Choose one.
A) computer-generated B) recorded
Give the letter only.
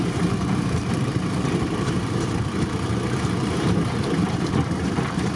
A